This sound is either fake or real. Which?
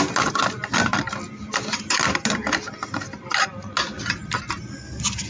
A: real